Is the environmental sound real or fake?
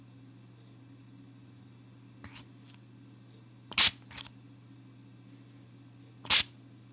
real